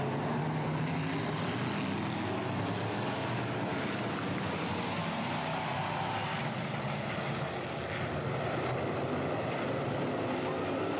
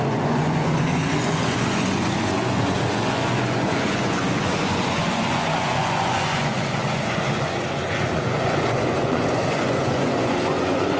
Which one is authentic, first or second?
first